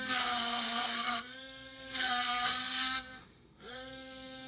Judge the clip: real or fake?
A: fake